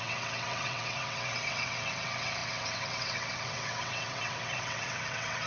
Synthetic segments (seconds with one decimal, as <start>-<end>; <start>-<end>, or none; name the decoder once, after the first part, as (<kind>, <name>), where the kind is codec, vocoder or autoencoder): 0.0-5.5 (vocoder, WaveNeXt)